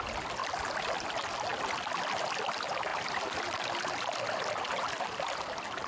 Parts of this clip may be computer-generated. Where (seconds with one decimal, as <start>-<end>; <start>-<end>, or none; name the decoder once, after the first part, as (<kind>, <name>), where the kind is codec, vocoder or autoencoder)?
0.4-1.1 (vocoder, BigVGAN v2); 2.9-4.2